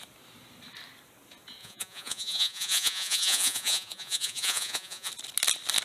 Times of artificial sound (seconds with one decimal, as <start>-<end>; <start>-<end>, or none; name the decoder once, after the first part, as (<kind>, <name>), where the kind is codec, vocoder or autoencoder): 1.6-5.1 (vocoder, Vocos)